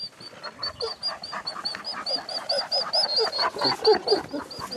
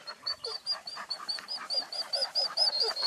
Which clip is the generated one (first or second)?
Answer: second